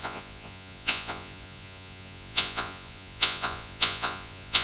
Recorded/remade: remade